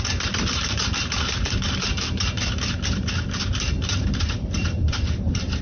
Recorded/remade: remade